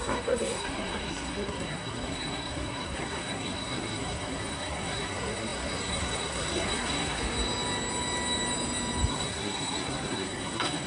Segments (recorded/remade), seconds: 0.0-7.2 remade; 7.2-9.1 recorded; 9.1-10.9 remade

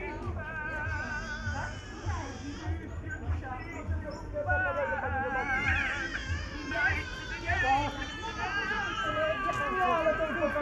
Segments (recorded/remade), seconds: 0.0-2.8 recorded; 2.8-4.5 remade; 4.5-6.2 recorded; 6.2-9.5 remade; 9.5-10.6 recorded

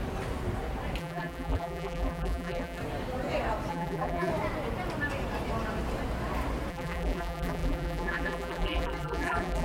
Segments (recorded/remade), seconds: 0.0-1.0 recorded; 1.0-2.8 remade; 2.8-3.7 recorded; 3.7-4.3 remade; 4.3-6.7 recorded; 6.7-9.6 remade

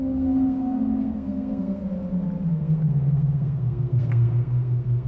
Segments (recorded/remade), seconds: 0.0-1.8 remade; 1.8-2.5 recorded; 2.5-5.1 remade